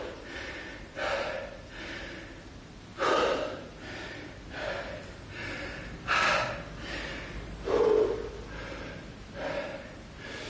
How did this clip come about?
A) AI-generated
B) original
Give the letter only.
B